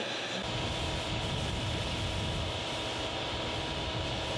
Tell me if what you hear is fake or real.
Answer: real